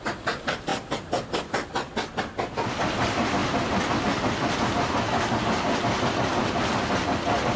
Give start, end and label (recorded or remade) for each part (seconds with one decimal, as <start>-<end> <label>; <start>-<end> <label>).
0.0-7.6 recorded